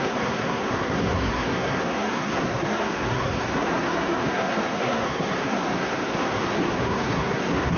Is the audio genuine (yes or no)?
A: no